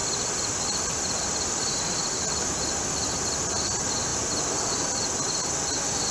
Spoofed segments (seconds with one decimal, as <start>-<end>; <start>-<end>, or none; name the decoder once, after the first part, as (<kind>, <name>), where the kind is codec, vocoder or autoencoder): none

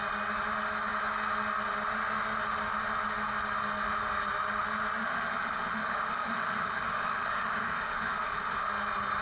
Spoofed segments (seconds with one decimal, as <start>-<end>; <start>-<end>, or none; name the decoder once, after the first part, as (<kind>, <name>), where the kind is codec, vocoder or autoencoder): 5.0-8.7 (autoencoder, DAC-VAE)